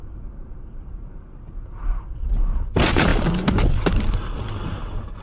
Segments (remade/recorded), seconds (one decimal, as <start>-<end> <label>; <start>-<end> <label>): 0.0-3.1 remade; 3.1-4.5 recorded; 4.5-5.2 remade